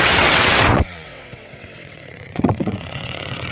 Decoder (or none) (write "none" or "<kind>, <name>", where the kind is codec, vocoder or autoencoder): vocoder, WaveNeXt